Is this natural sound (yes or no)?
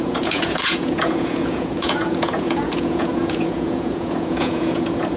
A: no